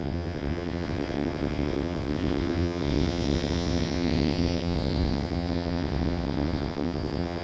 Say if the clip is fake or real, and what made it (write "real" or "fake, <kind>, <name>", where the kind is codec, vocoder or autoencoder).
fake, vocoder, WaveNeXt